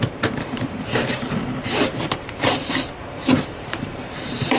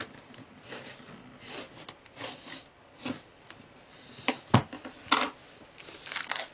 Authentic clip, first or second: second